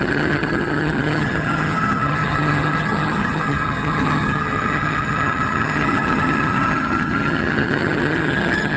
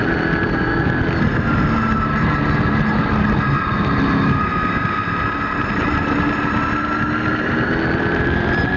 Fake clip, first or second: first